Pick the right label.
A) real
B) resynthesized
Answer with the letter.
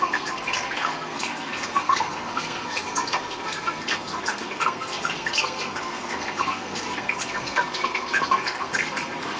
B